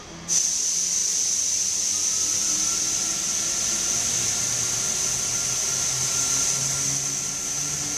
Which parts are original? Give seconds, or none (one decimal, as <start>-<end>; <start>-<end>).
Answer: 0.0-8.0